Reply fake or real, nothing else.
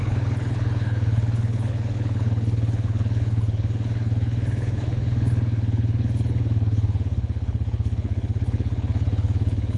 fake